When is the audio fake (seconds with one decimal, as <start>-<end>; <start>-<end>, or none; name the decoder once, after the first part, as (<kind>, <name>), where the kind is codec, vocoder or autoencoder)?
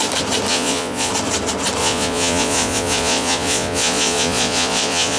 0.5-1.1 (vocoder, Vocos); 1.8-5.2